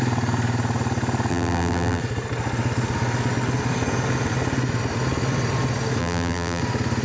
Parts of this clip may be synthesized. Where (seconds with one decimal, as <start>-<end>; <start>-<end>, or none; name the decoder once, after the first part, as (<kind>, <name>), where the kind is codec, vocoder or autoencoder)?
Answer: 1.3-2.0 (vocoder, BigVGAN v2); 6.0-6.6